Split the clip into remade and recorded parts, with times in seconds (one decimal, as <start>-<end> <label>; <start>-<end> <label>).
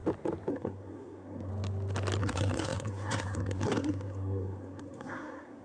0.0-0.5 recorded; 0.5-1.5 remade; 1.5-2.2 recorded; 2.2-5.6 remade